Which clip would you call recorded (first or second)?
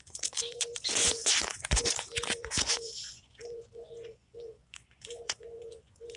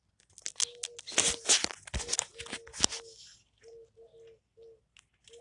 second